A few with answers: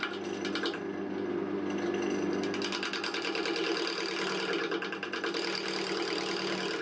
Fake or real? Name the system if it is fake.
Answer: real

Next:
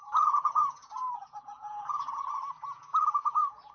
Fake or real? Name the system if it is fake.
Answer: fake, vocoder, Vocos